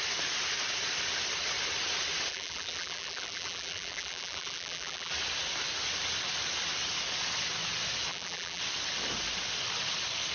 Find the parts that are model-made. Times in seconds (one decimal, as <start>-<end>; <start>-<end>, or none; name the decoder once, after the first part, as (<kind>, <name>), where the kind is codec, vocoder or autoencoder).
2.3-5.1 (vocoder, BigVGAN v2); 8.1-8.6